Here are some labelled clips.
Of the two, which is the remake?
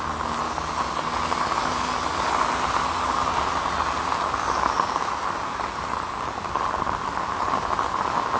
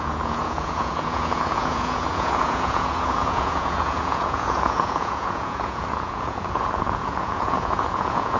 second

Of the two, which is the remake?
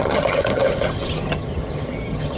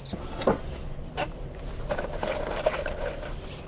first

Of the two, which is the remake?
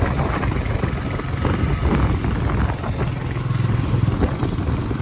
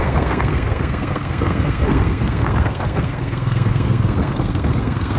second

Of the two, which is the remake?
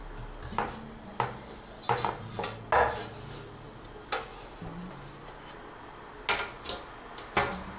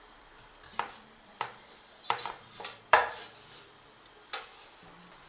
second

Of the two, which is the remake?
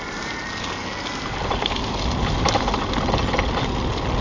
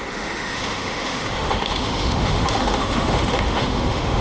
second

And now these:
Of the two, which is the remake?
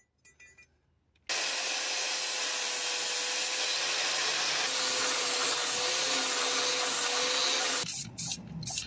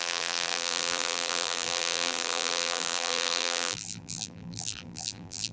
second